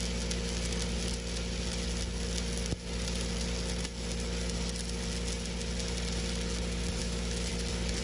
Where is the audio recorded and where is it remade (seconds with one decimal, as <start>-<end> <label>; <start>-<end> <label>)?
0.0-7.0 recorded; 7.0-7.5 remade; 7.5-8.0 recorded